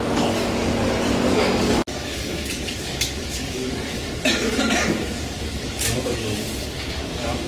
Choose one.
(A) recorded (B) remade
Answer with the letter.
B